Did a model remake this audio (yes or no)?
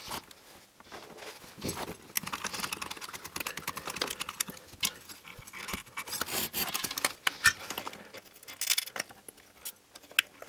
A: no